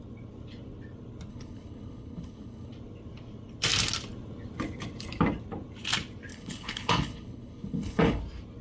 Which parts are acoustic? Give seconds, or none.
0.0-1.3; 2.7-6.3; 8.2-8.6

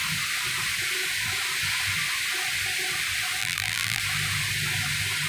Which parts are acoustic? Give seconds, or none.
0.0-3.4; 4.0-5.3

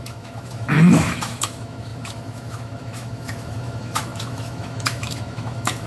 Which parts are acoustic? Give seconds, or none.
none

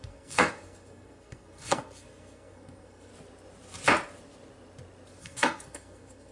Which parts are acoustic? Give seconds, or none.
3.1-5.2

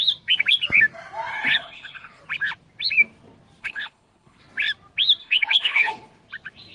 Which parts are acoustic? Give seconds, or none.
0.0-1.3; 2.2-3.6; 4.4-5.2; 5.9-6.7